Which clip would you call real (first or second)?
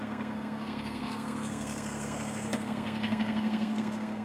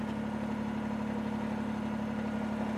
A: second